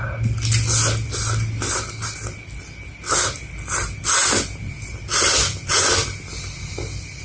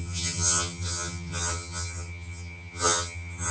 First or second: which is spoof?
second